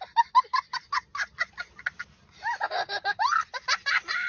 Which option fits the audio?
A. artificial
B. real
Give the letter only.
B